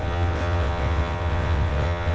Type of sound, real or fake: fake